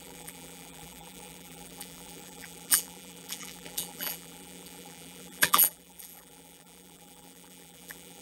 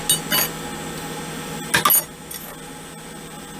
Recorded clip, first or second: second